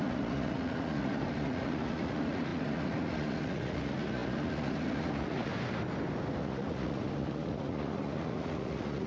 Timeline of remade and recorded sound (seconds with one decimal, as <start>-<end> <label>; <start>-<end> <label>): 0.0-5.5 remade; 5.5-6.4 recorded; 6.4-9.1 remade